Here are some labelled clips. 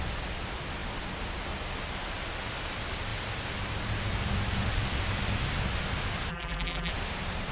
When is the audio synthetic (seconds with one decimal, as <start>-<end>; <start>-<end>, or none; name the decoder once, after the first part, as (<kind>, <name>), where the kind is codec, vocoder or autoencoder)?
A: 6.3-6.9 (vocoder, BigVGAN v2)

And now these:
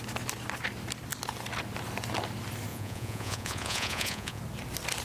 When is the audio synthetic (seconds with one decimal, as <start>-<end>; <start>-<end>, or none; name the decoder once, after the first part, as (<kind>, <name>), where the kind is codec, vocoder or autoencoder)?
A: 2.7-4.4 (vocoder, Vocos)

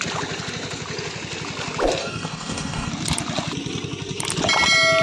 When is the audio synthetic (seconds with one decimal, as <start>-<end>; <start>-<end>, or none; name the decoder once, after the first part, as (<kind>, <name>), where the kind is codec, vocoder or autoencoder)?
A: 2.0-2.9 (codec, DAC)

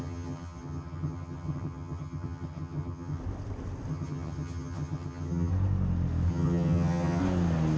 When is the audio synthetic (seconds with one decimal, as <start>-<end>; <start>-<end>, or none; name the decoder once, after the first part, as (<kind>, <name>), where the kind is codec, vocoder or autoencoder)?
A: 0.0-3.2 (vocoder, HiFi-GAN); 3.9-5.5; 6.3-7.2

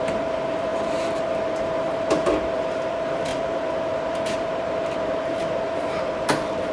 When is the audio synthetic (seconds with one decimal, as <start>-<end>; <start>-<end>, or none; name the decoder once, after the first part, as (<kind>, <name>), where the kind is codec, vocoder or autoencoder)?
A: 0.0-6.7 (vocoder, BigVGAN v2)

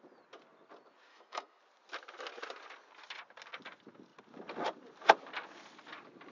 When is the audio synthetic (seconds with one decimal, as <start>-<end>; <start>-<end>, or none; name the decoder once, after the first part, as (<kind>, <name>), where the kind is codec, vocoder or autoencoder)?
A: 1.1-1.6 (autoencoder, DAC-VAE)

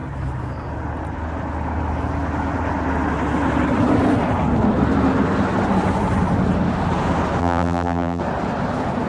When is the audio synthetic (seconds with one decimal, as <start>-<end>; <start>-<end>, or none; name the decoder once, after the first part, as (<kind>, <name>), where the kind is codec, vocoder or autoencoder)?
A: 7.4-8.2 (vocoder, BigVGAN v2)